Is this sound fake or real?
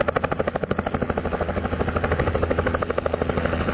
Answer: real